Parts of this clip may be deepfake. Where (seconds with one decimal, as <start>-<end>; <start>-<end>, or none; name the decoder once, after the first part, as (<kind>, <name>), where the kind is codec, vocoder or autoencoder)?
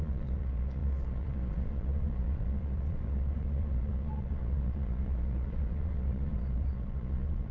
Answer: 0.0-7.5 (vocoder, Vocos)